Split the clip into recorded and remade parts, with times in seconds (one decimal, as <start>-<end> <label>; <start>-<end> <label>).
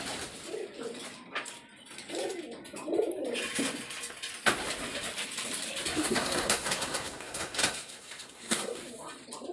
0.0-6.0 recorded; 6.0-8.8 remade; 8.8-9.5 recorded